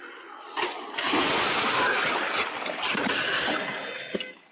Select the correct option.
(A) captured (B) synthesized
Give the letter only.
A